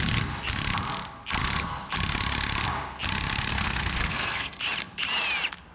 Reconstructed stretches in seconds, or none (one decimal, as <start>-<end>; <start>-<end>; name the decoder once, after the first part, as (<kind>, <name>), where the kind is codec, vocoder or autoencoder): 1.4-1.9 (codec, SNAC); 3.5-4.6